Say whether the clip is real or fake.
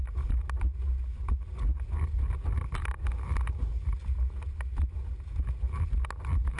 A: real